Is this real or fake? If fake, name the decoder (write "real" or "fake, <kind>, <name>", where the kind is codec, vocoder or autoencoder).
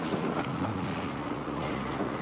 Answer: fake, vocoder, Vocos